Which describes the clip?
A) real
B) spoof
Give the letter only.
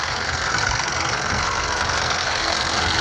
B